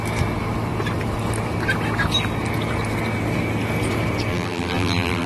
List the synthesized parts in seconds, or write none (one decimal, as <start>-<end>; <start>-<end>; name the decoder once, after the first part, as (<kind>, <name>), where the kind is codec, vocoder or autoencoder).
4.3-5.3 (vocoder, BigVGAN v2)